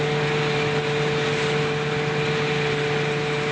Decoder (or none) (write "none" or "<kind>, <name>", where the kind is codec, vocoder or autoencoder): none